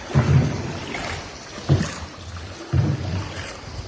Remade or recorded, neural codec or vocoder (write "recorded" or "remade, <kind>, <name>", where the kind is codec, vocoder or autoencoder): recorded